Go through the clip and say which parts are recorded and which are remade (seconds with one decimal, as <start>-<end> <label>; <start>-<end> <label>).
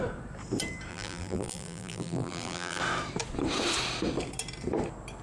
0.0-0.9 recorded; 0.9-2.8 remade; 2.8-5.2 recorded